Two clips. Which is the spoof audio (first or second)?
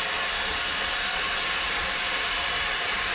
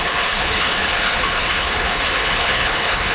second